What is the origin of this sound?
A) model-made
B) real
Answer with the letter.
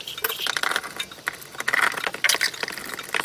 B